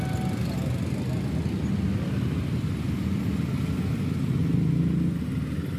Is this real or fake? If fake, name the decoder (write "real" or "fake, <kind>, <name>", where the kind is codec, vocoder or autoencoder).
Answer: real